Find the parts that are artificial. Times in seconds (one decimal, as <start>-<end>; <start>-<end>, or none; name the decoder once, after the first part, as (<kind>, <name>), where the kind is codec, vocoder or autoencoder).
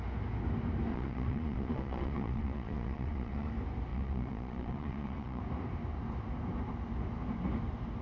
0.9-3.5 (vocoder, Vocos); 3.9-5.4